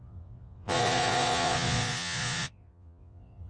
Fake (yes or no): yes